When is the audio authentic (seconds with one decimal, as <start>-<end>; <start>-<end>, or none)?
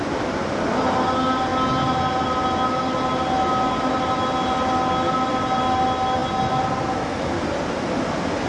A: 0.0-8.5